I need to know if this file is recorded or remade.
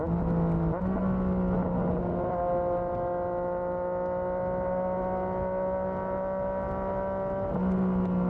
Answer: recorded